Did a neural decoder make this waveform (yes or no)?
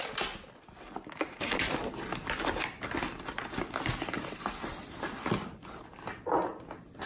no